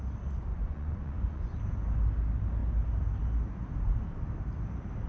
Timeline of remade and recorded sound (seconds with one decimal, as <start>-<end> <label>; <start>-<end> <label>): 0.0-0.5 recorded; 0.5-1.6 remade; 1.6-5.1 recorded